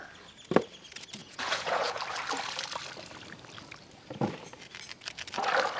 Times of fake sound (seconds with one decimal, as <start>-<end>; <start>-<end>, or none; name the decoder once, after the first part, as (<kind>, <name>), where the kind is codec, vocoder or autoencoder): 1.2-2.0 (vocoder, Vocos)